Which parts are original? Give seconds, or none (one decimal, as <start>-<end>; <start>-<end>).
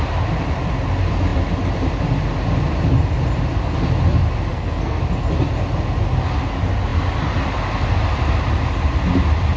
0.0-4.5; 5.0-9.6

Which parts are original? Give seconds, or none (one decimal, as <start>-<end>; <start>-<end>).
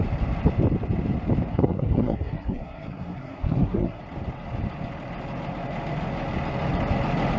0.0-1.5; 4.0-7.4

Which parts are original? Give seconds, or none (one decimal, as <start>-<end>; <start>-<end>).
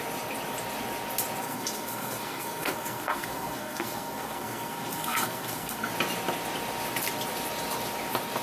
0.0-1.4; 5.9-8.4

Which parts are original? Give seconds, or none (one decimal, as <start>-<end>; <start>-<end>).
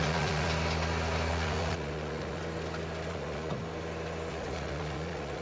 0.5-1.3; 2.4-3.1; 3.6-4.3